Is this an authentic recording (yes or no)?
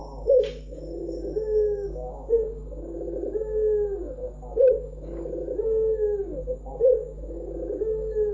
no